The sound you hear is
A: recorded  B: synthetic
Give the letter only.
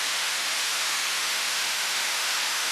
B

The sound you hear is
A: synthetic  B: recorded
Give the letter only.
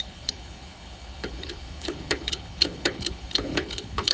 A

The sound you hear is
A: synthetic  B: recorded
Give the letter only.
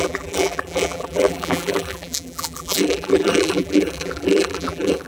A